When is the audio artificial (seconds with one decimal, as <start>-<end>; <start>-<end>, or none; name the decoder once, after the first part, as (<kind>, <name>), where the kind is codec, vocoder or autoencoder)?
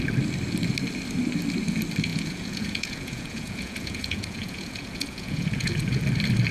2.1-6.0 (vocoder, Vocos)